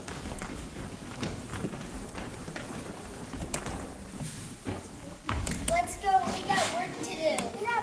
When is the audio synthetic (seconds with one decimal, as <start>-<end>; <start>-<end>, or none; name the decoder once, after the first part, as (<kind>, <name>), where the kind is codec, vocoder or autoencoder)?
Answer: 0.0-1.5 (codec, DAC); 4.8-7.8